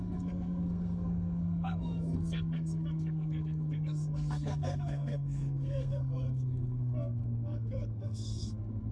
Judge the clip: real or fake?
fake